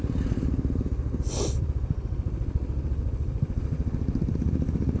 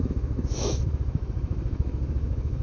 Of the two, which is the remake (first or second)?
second